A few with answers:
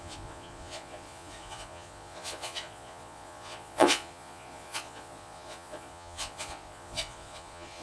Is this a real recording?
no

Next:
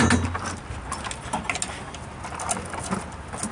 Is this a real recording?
yes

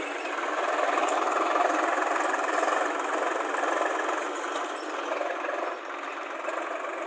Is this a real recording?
yes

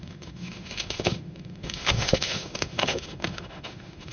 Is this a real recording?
no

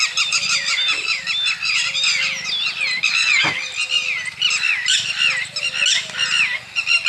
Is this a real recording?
yes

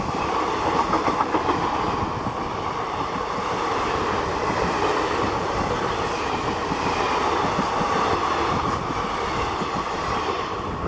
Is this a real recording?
yes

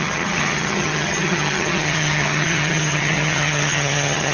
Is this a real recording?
no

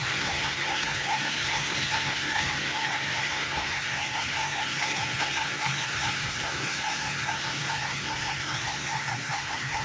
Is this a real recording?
no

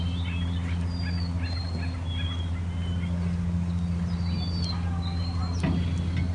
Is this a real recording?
yes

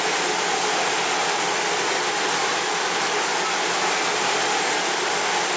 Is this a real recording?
yes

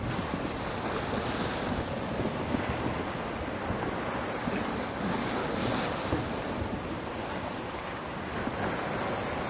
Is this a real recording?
yes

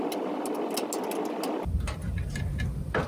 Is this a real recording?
yes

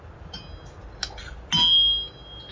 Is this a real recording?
yes